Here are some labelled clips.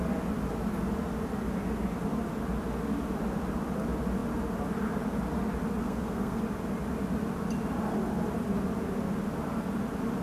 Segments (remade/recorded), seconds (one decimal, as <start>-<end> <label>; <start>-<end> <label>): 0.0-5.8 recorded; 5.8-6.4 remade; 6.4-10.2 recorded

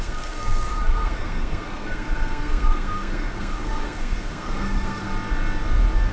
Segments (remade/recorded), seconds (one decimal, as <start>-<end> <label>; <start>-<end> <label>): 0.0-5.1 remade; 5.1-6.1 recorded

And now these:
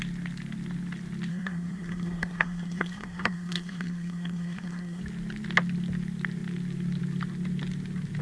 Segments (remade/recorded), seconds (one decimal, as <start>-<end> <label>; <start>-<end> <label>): 0.0-1.3 recorded; 1.3-5.0 remade; 5.0-8.2 recorded

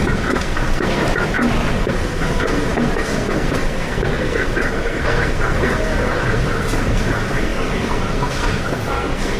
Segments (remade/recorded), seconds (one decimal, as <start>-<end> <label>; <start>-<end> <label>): 0.0-1.0 remade; 1.0-1.7 recorded; 1.7-9.4 remade